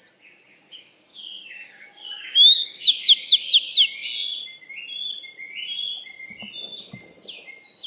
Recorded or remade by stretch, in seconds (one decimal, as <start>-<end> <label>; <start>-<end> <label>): 0.0-1.1 recorded; 1.1-3.0 remade; 3.0-7.9 recorded

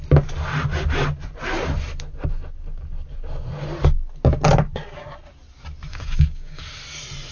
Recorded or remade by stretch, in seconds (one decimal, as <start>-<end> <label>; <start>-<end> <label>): 0.0-5.9 recorded; 5.9-6.6 remade; 6.6-7.3 recorded

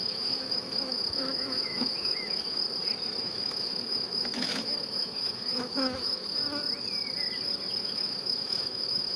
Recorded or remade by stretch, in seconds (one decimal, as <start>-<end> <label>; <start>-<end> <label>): 0.0-2.6 remade; 2.6-3.2 recorded; 3.2-6.4 remade; 6.4-7.8 recorded; 7.8-9.2 remade

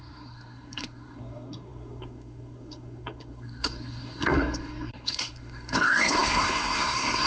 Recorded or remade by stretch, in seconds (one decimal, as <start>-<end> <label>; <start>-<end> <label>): 0.0-7.3 remade

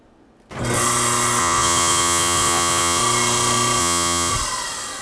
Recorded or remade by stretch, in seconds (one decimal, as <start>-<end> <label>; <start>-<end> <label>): 0.0-1.4 recorded; 1.4-3.0 remade; 3.0-3.8 recorded; 3.8-4.3 remade; 4.3-5.0 recorded